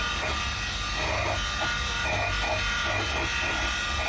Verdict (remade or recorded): recorded